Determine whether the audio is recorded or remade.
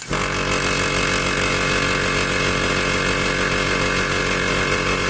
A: recorded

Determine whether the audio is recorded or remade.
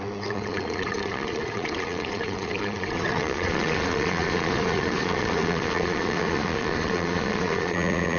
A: remade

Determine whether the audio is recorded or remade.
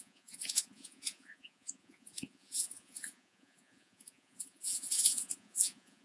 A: remade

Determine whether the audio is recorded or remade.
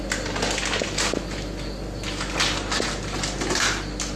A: recorded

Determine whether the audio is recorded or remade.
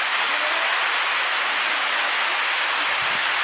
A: recorded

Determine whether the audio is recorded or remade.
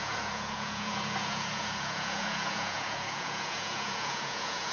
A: remade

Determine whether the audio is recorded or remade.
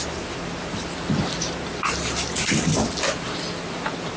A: recorded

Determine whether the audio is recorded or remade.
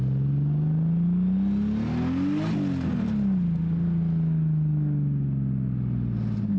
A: recorded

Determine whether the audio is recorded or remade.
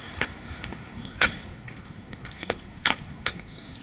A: remade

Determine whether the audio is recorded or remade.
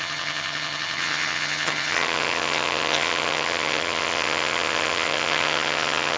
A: remade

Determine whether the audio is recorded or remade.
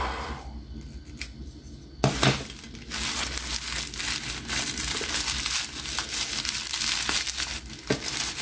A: recorded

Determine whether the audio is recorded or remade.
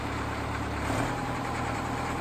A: remade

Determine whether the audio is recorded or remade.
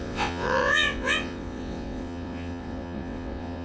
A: remade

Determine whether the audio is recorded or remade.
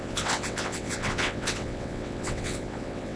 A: remade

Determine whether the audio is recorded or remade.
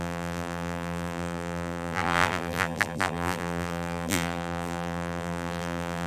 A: remade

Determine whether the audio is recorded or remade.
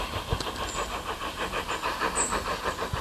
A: recorded